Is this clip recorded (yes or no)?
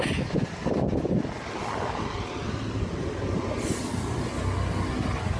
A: yes